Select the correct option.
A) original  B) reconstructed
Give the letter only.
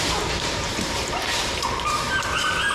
B